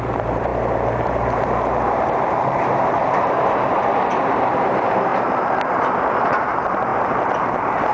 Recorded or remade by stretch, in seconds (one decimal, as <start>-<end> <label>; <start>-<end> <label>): 0.0-5.1 remade; 5.1-6.1 recorded; 6.1-6.9 remade; 6.9-7.5 recorded; 7.5-7.9 remade